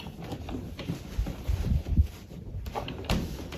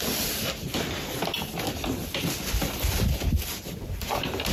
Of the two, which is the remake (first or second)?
first